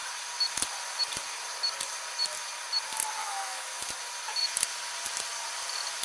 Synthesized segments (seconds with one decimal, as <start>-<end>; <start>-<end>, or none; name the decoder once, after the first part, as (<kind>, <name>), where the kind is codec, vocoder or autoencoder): 3.2-3.9 (autoencoder, DAC-VAE)